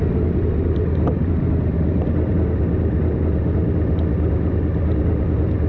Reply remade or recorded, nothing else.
recorded